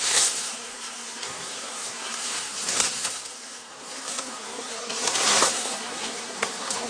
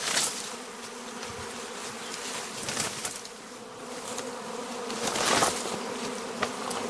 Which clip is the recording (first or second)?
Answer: second